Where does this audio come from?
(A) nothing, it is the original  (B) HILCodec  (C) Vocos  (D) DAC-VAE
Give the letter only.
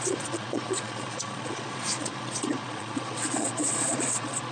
C